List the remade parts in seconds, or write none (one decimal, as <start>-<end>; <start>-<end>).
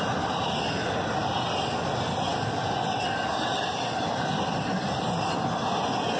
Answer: none